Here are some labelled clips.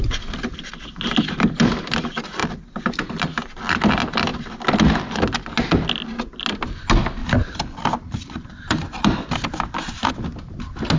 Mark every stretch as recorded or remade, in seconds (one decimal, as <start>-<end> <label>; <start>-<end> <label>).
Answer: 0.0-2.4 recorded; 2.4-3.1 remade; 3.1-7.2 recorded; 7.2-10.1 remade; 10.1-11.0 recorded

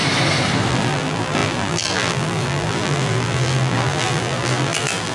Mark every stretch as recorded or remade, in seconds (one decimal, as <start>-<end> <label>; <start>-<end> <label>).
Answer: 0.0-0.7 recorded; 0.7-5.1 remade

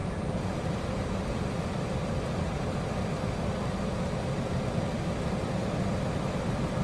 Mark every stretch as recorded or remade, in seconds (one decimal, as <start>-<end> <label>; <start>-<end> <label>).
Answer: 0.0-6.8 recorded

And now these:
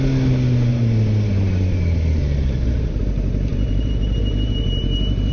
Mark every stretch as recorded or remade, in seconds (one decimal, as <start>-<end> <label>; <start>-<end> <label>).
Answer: 0.0-0.7 recorded; 0.7-3.0 remade; 3.0-3.5 recorded; 3.5-4.2 remade; 4.2-5.3 recorded